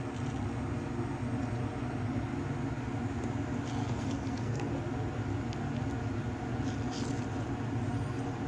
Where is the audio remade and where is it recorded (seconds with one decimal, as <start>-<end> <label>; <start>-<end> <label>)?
0.0-3.8 recorded; 3.8-4.7 remade; 4.7-8.5 recorded